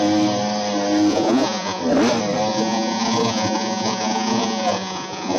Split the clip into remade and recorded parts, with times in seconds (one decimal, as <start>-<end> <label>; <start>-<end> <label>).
0.0-1.1 recorded; 1.1-1.8 remade; 1.8-2.5 recorded; 2.5-5.4 remade